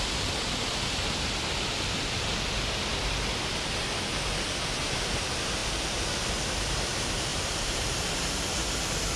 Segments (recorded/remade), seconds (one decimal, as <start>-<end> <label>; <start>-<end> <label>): 0.0-7.3 recorded; 7.3-8.7 remade; 8.7-9.2 recorded